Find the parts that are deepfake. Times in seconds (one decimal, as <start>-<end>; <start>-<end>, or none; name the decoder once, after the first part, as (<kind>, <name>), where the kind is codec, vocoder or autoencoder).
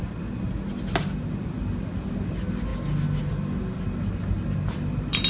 none